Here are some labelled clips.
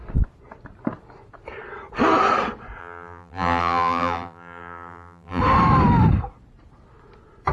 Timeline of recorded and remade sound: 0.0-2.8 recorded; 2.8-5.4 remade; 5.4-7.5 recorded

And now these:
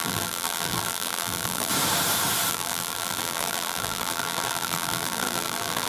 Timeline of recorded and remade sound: 0.0-1.7 remade; 1.7-2.5 recorded; 2.5-5.9 remade

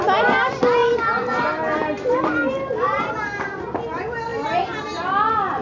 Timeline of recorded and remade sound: 0.0-0.8 recorded; 0.8-3.1 remade; 3.1-5.6 recorded

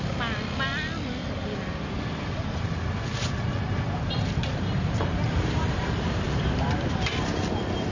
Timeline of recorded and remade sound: 0.0-3.5 recorded; 3.5-6.4 remade; 6.4-7.9 recorded

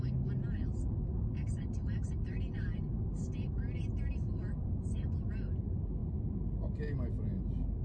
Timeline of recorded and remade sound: 0.0-7.8 recorded

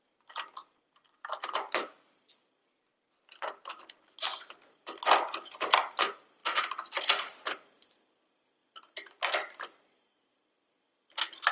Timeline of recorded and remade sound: 0.0-11.5 recorded

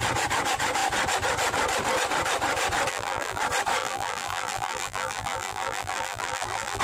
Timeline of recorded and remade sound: 0.0-2.9 recorded; 2.9-3.4 remade; 3.4-3.8 recorded; 3.8-6.8 remade

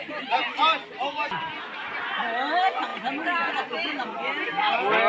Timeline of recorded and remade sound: 0.0-0.6 remade; 0.6-2.0 recorded; 2.0-5.1 remade